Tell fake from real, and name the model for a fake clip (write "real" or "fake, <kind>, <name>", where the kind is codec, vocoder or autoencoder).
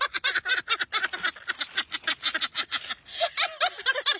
real